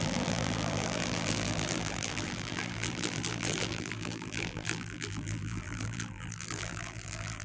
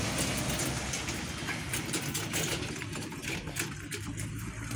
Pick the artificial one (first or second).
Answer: first